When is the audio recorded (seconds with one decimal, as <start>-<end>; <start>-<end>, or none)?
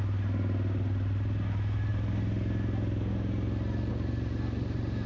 0.0-5.1